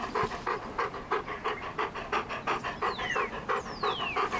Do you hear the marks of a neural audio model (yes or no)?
no